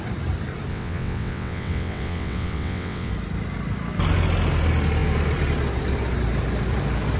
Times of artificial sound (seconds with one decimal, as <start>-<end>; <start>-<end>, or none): 0.7-3.1

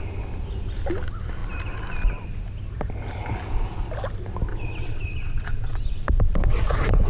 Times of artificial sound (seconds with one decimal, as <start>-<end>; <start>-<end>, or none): 4.5-7.1